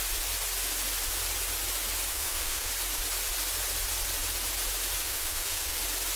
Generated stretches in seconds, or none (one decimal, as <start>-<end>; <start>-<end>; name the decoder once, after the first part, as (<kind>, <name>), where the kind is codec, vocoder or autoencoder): 2.1-2.7 (codec, SNAC); 5.0-5.8